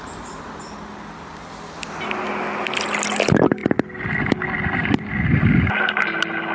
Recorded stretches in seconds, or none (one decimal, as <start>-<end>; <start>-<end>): 0.0-6.5